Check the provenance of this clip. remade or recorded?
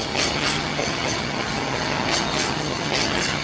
remade